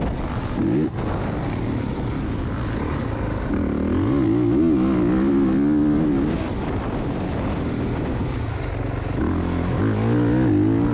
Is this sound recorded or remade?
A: recorded